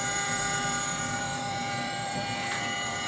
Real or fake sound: fake